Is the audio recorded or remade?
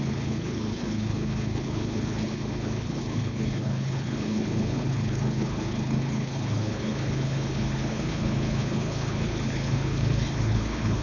remade